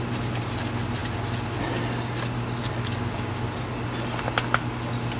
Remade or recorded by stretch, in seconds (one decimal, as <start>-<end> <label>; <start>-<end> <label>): 0.0-5.2 recorded